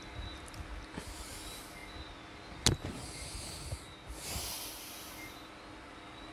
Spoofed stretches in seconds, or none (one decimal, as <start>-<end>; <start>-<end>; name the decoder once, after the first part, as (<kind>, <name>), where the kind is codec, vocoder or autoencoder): none